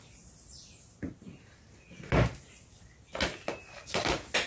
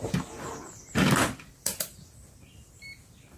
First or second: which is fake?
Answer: second